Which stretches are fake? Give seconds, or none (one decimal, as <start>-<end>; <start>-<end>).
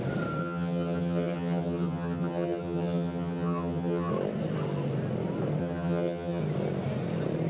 0.4-4.1; 5.6-6.4